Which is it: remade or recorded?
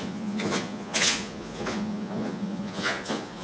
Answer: remade